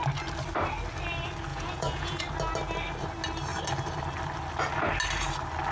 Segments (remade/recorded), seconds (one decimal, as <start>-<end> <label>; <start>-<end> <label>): 0.0-1.5 recorded; 1.5-2.2 remade; 2.2-5.7 recorded